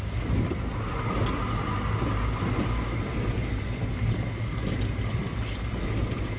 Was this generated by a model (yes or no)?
no